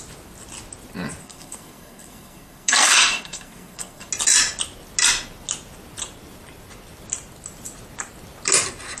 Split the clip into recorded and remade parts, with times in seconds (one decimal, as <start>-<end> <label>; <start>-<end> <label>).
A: 0.0-1.2 recorded; 1.2-4.1 remade; 4.1-9.0 recorded